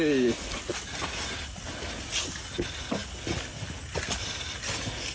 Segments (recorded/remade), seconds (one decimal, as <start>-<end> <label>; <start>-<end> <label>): 0.0-5.1 recorded